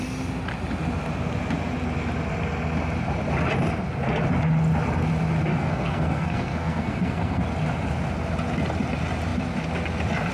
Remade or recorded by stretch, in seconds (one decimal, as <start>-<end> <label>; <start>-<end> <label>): 0.0-5.5 recorded; 5.5-7.4 remade; 7.4-10.3 recorded